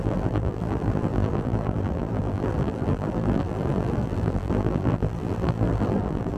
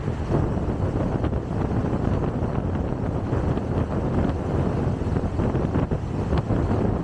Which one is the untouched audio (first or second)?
second